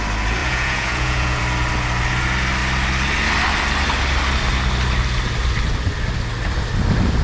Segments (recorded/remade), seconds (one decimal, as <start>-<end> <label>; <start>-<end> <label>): 0.0-0.4 recorded; 0.4-1.4 remade; 1.4-7.2 recorded